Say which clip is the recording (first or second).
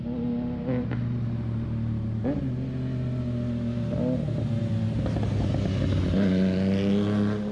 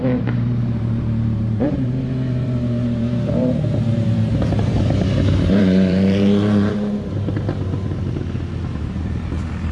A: first